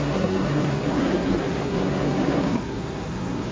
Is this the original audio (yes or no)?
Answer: no